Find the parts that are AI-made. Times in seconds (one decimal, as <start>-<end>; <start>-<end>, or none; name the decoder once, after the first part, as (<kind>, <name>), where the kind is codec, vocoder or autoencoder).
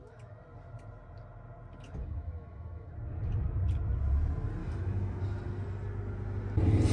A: 2.0-2.9 (autoencoder, DAC-VAE); 4.6-5.2